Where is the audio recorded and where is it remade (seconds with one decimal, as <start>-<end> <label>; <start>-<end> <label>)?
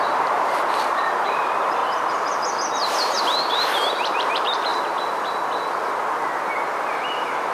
0.0-1.8 remade; 1.8-3.2 recorded; 3.2-4.7 remade; 4.7-6.9 recorded; 6.9-7.5 remade